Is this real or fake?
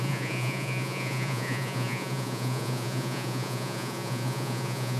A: fake